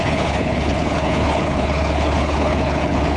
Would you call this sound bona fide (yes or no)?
no